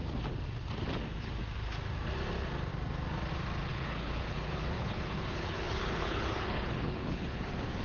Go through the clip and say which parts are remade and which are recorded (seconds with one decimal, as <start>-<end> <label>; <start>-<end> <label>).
0.0-3.7 recorded; 3.7-7.8 remade